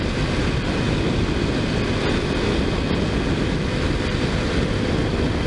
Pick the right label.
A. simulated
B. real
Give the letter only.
B